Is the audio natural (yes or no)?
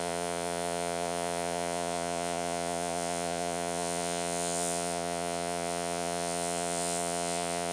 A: no